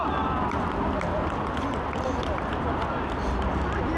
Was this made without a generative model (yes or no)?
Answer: yes